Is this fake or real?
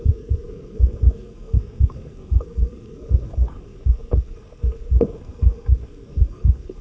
fake